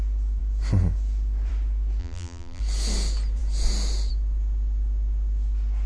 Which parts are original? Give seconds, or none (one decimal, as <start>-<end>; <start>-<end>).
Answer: 0.0-2.0; 2.6-5.9